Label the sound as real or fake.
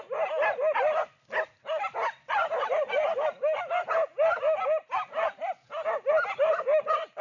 real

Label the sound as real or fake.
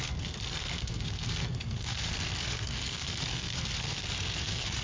fake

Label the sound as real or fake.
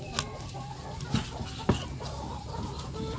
real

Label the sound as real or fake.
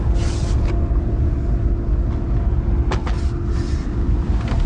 real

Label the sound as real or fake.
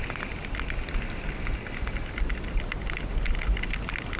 real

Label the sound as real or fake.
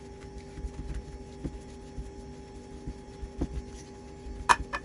real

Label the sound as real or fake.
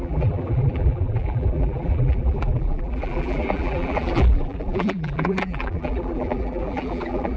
fake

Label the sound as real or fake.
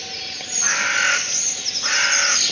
real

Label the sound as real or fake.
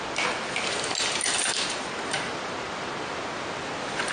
real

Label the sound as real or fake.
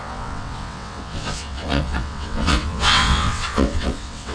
fake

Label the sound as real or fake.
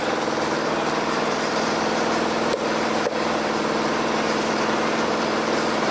fake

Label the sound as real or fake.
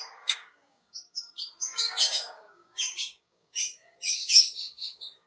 fake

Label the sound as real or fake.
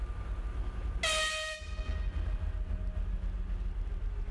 real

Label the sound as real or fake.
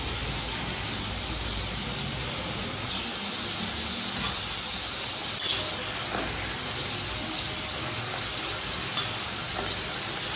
real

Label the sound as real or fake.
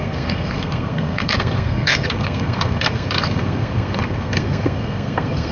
fake